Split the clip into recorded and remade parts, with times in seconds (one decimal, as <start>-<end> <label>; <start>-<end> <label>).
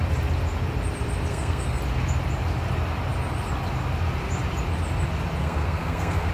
0.0-1.3 recorded; 1.3-1.8 remade; 1.8-5.4 recorded; 5.4-6.3 remade